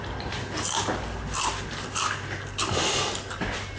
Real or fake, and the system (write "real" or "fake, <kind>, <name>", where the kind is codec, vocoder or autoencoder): real